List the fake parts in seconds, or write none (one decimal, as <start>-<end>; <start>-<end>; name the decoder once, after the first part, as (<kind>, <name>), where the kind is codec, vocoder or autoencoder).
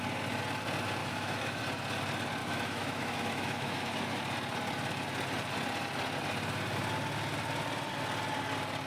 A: 1.0-1.6 (autoencoder, DAC-VAE); 2.4-4.2